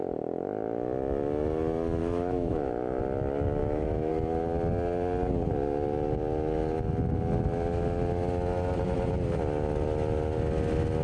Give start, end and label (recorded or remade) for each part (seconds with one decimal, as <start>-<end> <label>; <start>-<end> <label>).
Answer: 0.0-2.0 recorded; 2.0-3.0 remade; 3.0-3.6 recorded; 3.6-4.1 remade; 4.1-11.0 recorded